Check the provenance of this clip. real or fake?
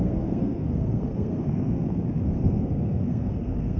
fake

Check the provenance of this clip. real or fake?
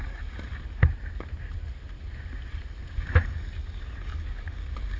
real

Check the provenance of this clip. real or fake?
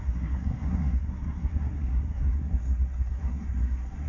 fake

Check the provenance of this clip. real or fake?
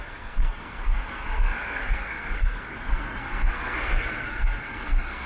fake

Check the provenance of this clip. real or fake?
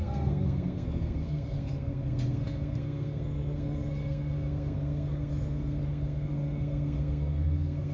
fake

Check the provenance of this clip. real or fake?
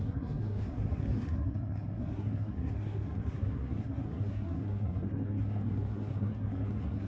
fake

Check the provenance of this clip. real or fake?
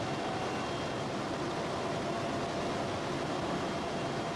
real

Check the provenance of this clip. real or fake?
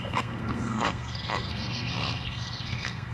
fake